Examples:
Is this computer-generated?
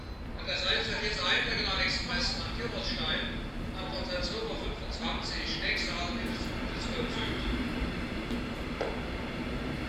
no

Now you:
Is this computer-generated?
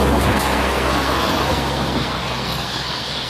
yes